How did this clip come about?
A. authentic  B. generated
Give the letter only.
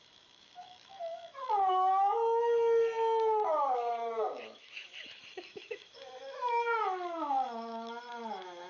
B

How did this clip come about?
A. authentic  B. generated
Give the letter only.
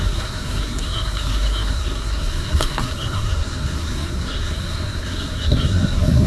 B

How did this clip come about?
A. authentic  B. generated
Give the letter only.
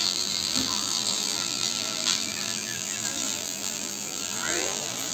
B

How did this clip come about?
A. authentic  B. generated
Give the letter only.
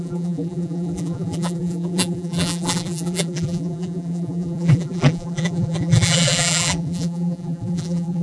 B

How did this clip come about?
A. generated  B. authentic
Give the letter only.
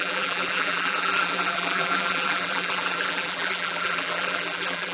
A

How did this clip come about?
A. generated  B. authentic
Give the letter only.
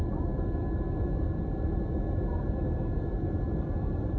B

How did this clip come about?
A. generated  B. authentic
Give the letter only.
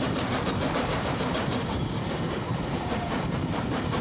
A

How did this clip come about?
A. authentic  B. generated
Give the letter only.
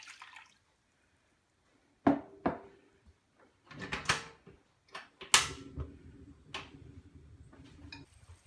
A